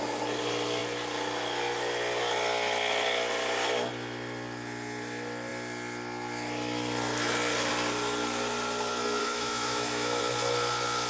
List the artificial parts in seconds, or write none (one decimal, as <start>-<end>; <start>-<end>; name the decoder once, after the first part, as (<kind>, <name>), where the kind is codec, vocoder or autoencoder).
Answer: 9.2-10.2 (autoencoder, DAC-VAE)